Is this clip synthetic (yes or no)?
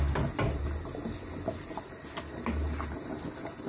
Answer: no